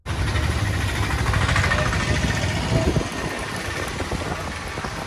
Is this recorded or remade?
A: recorded